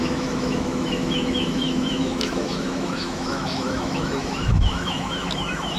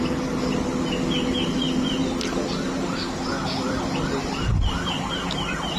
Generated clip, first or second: first